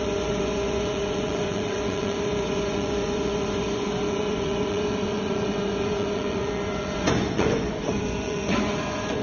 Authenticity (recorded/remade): remade